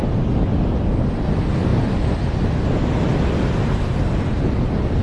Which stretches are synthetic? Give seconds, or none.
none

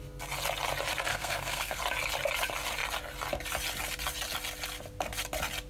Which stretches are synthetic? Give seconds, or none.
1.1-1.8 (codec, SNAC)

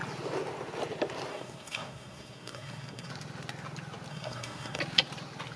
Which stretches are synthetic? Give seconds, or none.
1.3-3.1 (codec, SNAC); 4.1-4.8

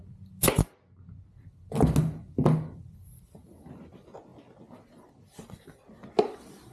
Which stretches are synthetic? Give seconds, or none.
none

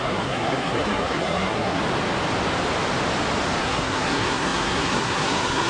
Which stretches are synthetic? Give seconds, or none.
0.0-1.8 (codec, SNAC); 3.6-5.7

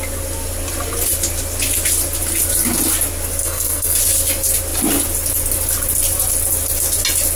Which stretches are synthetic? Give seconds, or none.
3.4-4.0 (codec, SNAC)